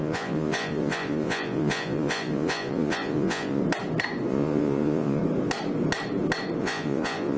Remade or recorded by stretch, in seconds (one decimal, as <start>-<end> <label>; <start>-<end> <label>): 0.0-3.6 remade; 3.6-4.3 recorded; 4.3-5.2 remade; 5.2-6.6 recorded; 6.6-7.4 remade